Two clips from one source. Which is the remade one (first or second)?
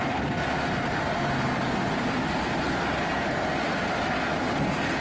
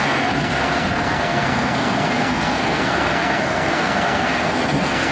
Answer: second